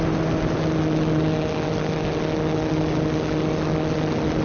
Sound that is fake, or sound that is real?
real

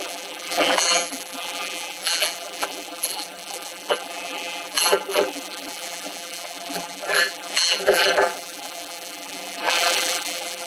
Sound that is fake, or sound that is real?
fake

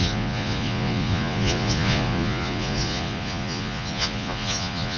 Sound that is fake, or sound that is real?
fake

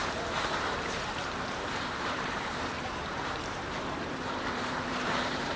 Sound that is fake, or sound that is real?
fake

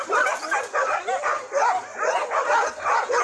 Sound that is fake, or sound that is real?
real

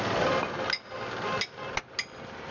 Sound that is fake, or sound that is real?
real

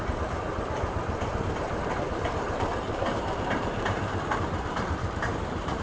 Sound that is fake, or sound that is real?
fake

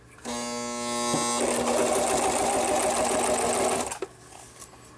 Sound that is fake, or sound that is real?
real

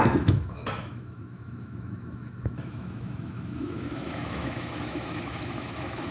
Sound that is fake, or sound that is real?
fake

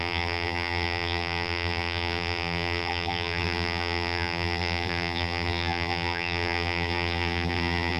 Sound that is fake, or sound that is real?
fake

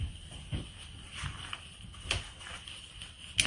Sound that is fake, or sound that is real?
real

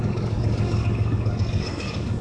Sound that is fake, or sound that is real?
fake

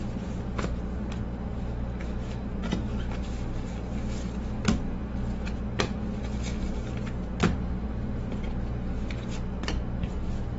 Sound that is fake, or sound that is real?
real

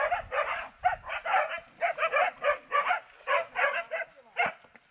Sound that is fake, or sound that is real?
real